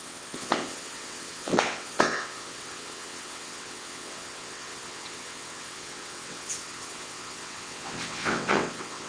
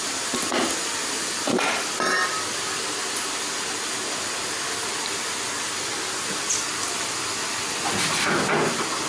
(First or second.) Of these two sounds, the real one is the second